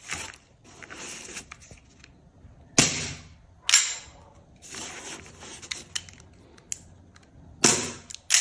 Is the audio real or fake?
real